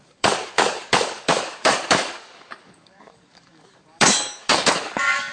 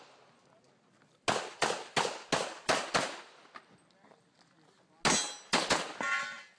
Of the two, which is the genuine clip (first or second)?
second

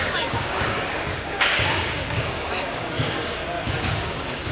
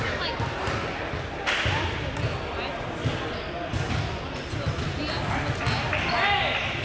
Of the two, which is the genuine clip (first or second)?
second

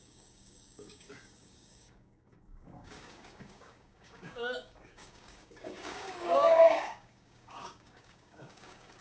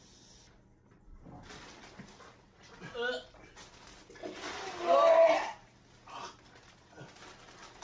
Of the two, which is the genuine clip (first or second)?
second